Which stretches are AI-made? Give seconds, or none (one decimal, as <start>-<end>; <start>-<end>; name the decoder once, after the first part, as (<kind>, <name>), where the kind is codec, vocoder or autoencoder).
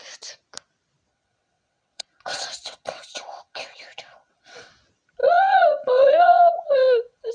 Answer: 1.1-4.7 (vocoder, WaveNeXt); 5.2-7.3